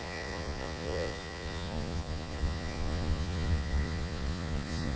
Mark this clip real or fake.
fake